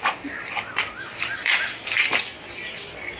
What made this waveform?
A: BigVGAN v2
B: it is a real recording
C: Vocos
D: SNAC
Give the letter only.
A